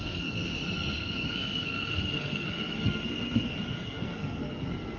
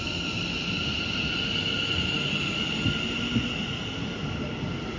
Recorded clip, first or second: second